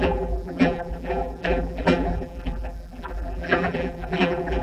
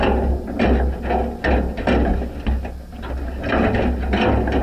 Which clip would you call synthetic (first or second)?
first